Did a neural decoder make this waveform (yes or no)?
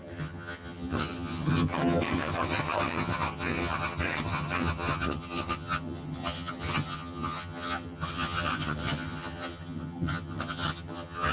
yes